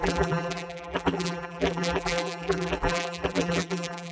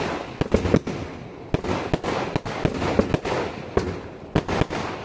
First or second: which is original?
second